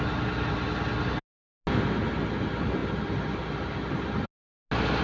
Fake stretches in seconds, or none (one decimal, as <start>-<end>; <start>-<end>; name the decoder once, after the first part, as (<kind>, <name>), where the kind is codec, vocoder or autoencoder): none